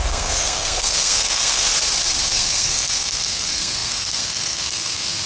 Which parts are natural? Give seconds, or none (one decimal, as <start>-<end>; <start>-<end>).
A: 1.7-2.3